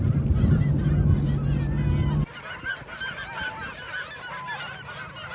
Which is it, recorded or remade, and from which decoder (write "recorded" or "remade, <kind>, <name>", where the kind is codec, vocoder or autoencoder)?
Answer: recorded